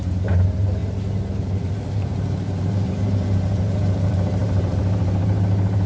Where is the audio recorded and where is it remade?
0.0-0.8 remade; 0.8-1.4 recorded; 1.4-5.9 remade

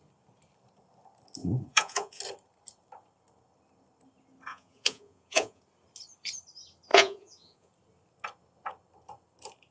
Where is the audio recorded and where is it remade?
0.0-1.4 recorded; 1.4-2.2 remade; 2.2-4.5 recorded; 4.5-5.6 remade; 5.6-6.9 recorded; 6.9-7.7 remade; 7.7-9.7 recorded